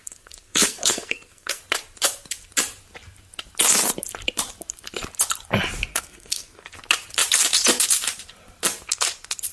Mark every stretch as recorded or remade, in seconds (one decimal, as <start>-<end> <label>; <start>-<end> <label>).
0.0-1.6 remade; 1.6-5.9 recorded; 5.9-6.7 remade; 6.7-9.5 recorded